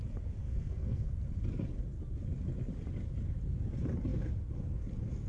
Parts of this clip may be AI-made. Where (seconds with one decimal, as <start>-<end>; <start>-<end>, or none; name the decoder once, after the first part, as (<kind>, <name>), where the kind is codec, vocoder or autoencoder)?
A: 0.4-1.1 (codec, SNAC)